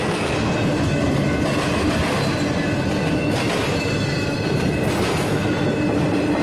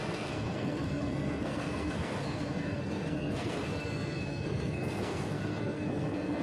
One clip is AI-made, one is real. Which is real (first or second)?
first